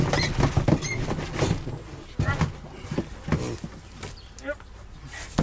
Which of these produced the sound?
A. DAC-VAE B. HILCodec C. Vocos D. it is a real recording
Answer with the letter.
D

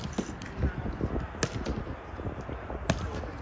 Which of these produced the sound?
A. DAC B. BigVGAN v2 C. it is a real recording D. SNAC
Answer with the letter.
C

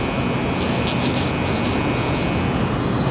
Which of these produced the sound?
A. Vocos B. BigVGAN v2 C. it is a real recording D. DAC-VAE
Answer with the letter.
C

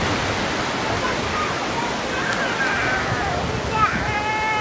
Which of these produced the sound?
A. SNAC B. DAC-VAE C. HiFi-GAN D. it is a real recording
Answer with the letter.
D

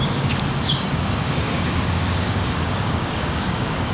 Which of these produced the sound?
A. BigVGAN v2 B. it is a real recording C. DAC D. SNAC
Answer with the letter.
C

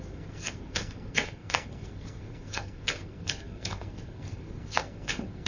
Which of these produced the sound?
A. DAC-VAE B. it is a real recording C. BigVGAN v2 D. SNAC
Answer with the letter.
D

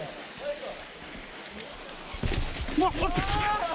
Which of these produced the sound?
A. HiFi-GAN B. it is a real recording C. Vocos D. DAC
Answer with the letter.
B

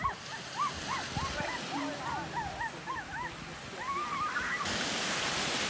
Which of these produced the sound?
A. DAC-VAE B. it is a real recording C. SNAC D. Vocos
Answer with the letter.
B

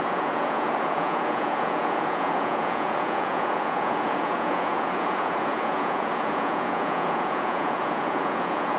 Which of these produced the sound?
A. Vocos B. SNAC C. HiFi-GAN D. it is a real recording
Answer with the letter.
A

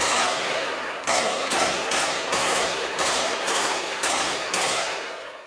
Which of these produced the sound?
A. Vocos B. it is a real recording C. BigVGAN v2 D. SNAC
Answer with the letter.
D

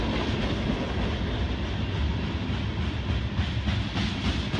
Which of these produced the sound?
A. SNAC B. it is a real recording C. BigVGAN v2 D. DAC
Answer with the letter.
B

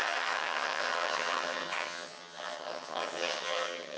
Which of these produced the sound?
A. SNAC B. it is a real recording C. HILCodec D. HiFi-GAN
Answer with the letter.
D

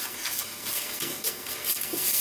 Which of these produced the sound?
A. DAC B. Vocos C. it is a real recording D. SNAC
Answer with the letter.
D